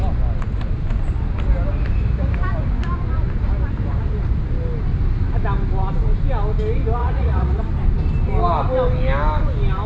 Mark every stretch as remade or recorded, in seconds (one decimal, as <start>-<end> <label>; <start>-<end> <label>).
0.0-7.0 recorded; 7.0-7.6 remade; 7.6-9.9 recorded